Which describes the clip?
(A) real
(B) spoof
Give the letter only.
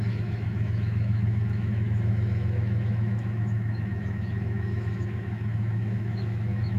B